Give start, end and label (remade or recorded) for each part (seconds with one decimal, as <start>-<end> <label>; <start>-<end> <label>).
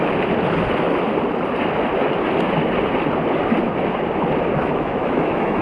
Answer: 0.0-4.6 recorded; 4.6-5.6 remade